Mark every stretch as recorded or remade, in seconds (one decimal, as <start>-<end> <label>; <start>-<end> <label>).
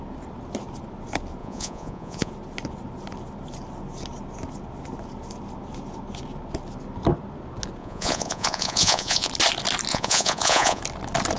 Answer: 0.0-1.4 recorded; 1.4-2.3 remade; 2.3-7.8 recorded; 7.8-9.3 remade; 9.3-9.9 recorded; 9.9-10.8 remade; 10.8-11.4 recorded